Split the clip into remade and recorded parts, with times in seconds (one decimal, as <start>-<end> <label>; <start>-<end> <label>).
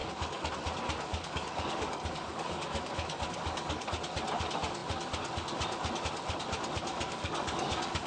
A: 0.0-0.5 remade; 0.5-1.1 recorded; 1.1-3.9 remade; 3.9-6.9 recorded; 6.9-8.1 remade